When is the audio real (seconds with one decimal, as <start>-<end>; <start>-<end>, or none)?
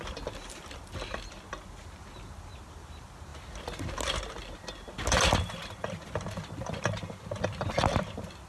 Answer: 0.0-8.5